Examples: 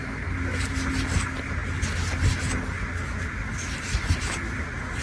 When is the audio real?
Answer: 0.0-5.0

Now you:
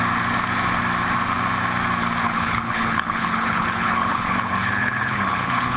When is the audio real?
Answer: 0.0-2.2

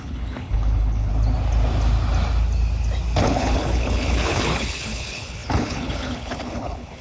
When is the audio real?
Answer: 1.1-3.2

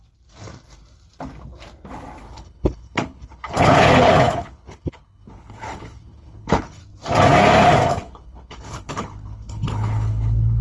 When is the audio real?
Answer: 0.0-2.2; 6.8-7.9

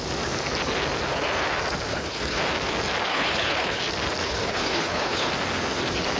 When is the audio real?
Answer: 0.0-1.9; 2.4-3.1; 3.8-4.2; 5.3-6.2

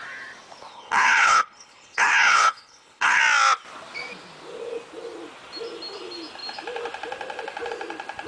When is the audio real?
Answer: 0.0-0.7; 3.2-8.3